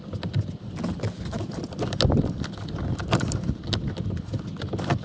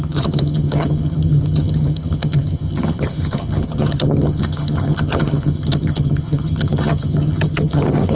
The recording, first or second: first